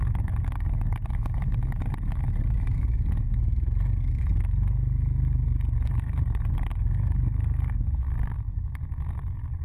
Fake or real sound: fake